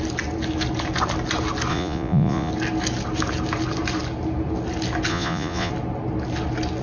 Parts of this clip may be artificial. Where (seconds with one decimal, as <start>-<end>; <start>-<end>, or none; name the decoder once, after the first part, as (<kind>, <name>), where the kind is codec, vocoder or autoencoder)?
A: 1.7-2.5 (vocoder, Vocos); 5.1-5.7